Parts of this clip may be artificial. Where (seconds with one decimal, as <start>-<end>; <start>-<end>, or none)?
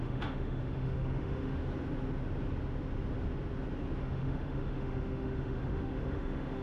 0.0-1.6; 4.0-6.6